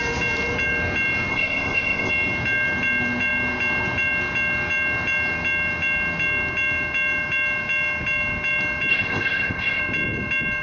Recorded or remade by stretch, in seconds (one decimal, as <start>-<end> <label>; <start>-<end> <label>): 0.0-1.3 recorded; 1.3-2.1 remade; 2.1-8.9 recorded; 8.9-9.8 remade; 9.8-10.6 recorded